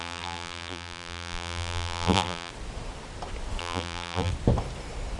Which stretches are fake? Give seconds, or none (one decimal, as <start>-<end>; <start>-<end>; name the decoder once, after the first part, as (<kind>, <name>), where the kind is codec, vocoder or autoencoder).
0.0-2.5 (vocoder, BigVGAN v2); 3.6-4.3